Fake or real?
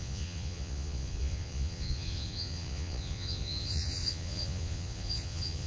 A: fake